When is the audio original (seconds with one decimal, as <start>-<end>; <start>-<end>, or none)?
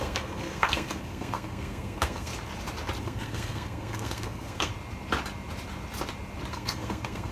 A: 2.3-3.0; 4.7-6.5